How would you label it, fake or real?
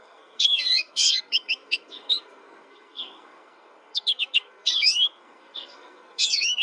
fake